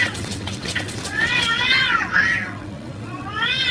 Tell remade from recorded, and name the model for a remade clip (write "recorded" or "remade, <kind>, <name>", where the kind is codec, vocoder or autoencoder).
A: remade, vocoder, WaveNeXt